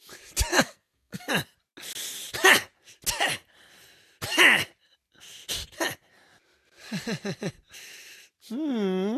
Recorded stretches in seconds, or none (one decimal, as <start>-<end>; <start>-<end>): 0.0-0.5; 1.3-9.2